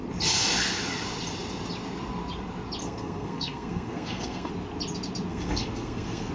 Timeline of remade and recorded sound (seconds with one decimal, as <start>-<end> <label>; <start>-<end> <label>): 0.0-2.8 recorded; 2.8-4.5 remade; 4.5-5.3 recorded; 5.3-6.3 remade